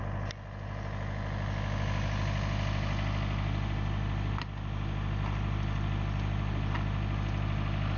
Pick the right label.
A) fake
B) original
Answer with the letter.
B